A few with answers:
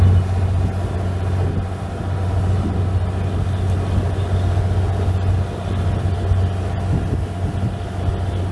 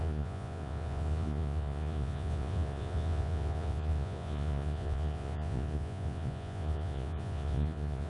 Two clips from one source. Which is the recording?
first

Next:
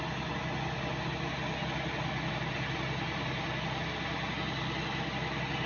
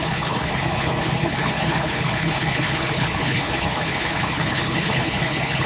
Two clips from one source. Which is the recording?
first